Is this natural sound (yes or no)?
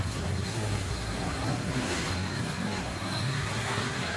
no